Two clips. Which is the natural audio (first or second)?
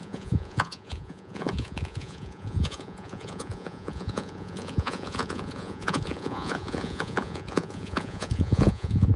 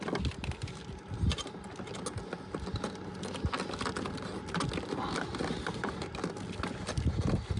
second